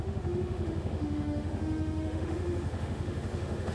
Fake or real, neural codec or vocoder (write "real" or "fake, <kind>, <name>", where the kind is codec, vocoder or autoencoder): fake, autoencoder, DAC-VAE